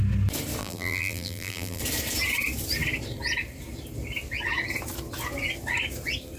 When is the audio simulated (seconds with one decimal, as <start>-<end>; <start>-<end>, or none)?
0.6-1.8